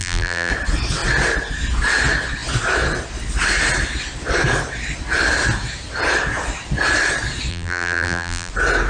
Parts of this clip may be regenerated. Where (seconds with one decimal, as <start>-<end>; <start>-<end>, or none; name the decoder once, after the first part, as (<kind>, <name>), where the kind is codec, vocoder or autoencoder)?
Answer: 0.0-0.5 (vocoder, BigVGAN v2); 7.5-8.5